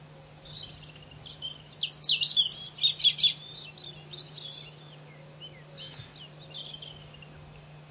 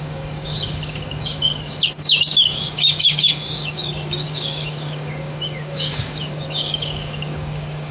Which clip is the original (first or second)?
first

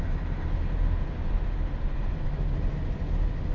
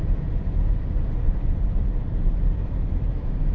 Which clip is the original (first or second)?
first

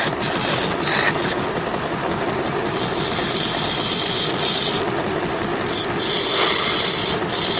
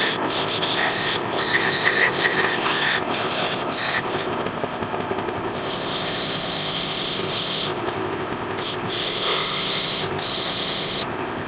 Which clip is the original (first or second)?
first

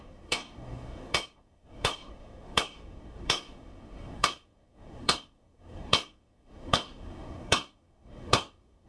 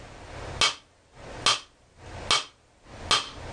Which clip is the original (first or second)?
second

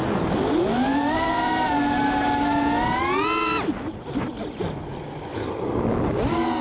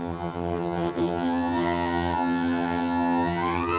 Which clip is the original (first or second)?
first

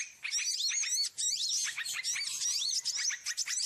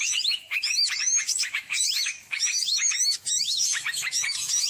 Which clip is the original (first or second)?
first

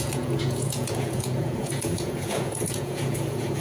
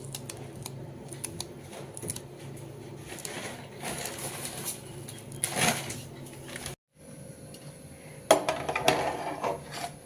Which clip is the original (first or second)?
second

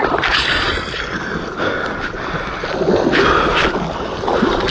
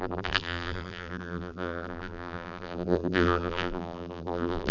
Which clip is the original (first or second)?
first